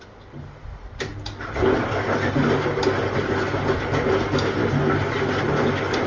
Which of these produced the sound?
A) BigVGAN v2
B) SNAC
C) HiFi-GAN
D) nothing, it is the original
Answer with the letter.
D